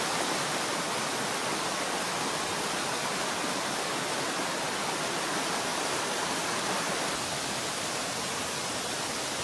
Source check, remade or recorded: recorded